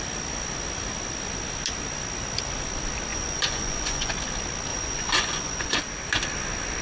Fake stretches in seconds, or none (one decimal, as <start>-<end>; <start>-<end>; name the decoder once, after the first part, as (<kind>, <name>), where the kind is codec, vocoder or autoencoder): 3.1-4.1 (vocoder, Vocos); 4.7-5.8